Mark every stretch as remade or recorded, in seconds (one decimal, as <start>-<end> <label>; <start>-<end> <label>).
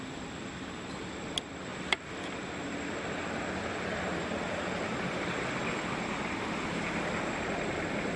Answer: 0.0-8.2 recorded